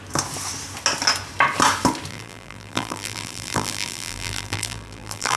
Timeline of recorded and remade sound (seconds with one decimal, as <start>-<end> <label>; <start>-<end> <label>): 0.0-2.1 recorded; 2.1-5.4 remade